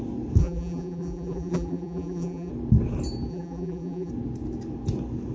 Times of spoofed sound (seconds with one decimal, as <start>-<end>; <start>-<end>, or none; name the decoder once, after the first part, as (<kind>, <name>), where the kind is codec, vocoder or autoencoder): 0.4-2.5 (vocoder, BigVGAN v2); 3.3-4.1